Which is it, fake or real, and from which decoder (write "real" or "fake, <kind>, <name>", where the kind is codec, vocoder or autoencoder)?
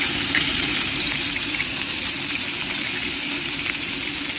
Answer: fake, vocoder, BigVGAN v2